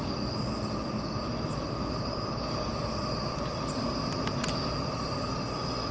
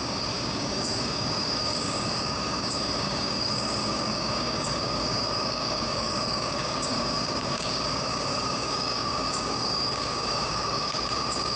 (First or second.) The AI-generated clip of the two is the second